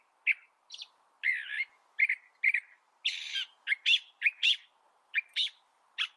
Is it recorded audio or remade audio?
recorded